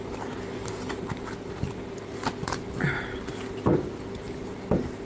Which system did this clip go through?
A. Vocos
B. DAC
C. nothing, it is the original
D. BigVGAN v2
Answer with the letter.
C